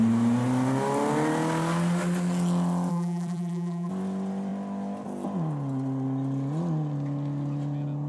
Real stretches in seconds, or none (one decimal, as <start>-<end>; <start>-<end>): 0.0-2.9; 3.9-8.1